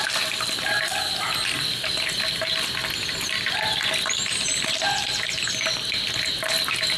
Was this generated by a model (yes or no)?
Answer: no